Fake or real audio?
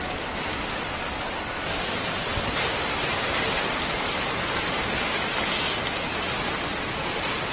real